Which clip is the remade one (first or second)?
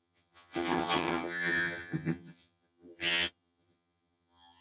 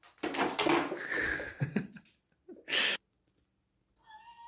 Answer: first